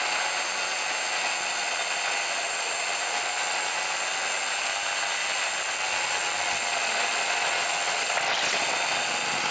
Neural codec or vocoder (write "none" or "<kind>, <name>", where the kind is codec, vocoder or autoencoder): none